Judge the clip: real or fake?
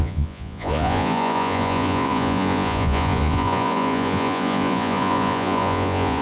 fake